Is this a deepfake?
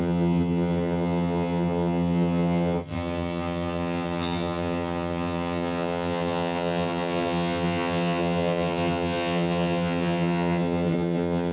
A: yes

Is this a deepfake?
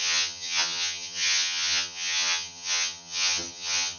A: yes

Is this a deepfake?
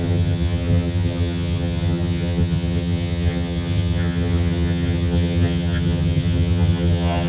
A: yes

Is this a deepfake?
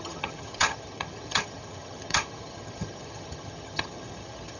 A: yes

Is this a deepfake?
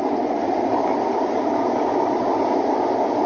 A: no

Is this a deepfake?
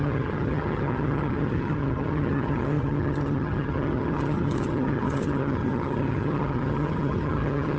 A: yes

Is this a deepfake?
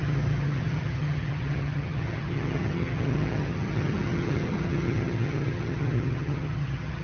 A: yes